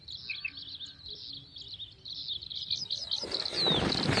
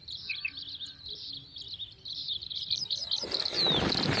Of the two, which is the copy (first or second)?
second